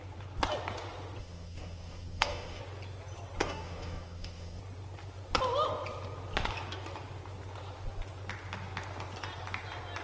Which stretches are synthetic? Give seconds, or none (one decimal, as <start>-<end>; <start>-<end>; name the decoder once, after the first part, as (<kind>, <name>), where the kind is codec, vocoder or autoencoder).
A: 1.2-2.6 (codec, DAC); 3.4-4.6